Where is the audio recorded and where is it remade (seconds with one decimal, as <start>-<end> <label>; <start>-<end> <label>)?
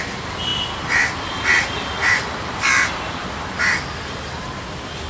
0.0-5.1 recorded